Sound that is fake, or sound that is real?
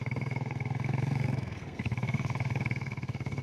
fake